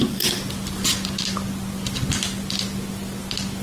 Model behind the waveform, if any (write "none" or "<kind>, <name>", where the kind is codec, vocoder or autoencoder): none